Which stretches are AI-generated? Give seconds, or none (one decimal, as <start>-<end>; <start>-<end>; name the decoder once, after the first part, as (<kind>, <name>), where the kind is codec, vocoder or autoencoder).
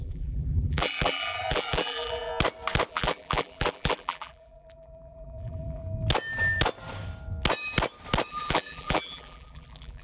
0.0-2.3 (vocoder, BigVGAN v2); 2.9-5.8; 8.3-10.0